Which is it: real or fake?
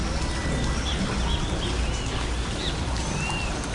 real